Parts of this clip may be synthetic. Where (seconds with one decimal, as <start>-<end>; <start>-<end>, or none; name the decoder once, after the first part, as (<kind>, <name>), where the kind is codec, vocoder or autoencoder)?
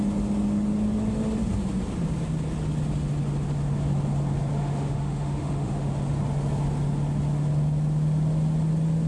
4.6-5.9 (autoencoder, DAC-VAE)